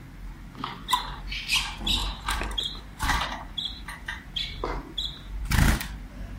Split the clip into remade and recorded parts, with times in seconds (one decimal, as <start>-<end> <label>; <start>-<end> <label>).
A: 0.0-2.0 recorded; 2.0-2.8 remade; 2.8-4.1 recorded; 4.1-5.4 remade; 5.4-6.4 recorded